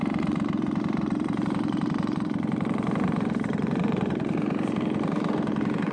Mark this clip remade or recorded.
remade